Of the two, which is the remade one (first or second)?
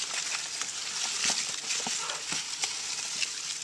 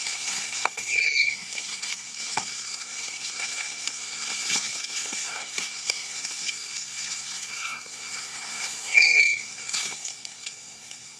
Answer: second